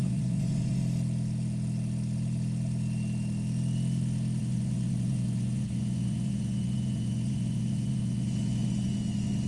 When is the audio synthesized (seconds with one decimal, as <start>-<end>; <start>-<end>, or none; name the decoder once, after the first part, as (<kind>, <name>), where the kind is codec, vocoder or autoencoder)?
0.0-0.8 (vocoder, Vocos); 4.4-9.5